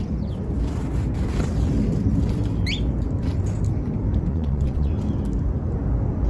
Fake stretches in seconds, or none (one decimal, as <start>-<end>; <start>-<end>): 4.3-4.9